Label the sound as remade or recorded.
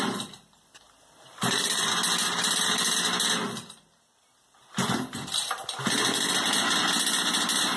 recorded